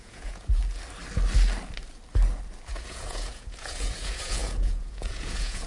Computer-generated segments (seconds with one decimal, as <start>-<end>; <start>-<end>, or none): 0.0-0.6; 2.7-5.7